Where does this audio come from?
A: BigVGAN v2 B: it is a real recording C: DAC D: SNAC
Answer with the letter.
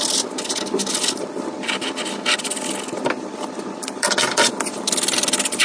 B